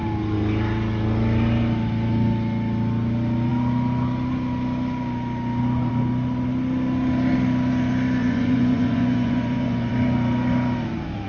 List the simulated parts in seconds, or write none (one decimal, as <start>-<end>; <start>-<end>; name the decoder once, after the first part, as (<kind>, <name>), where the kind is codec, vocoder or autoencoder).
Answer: 8.2-9.9 (vocoder, Vocos)